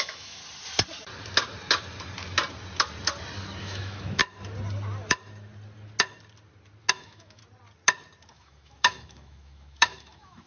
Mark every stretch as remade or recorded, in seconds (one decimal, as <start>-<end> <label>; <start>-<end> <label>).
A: 0.0-0.4 remade; 0.4-3.6 recorded; 3.6-4.2 remade; 4.2-6.9 recorded; 6.9-7.4 remade; 7.4-8.3 recorded; 8.3-10.5 remade